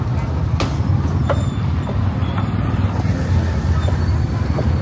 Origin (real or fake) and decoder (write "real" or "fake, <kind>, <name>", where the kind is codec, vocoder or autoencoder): real